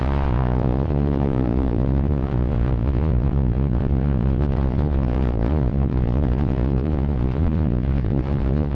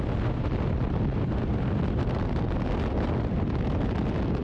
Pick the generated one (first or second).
first